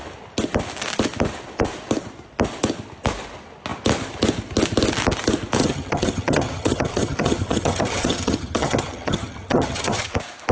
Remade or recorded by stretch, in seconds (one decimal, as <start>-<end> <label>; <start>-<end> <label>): 0.0-5.6 recorded; 5.6-10.1 remade; 10.1-10.5 recorded